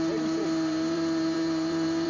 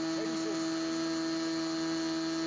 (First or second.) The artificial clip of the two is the first